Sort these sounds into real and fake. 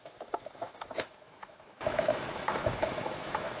fake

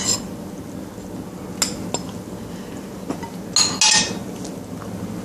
real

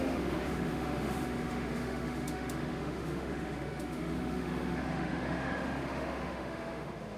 fake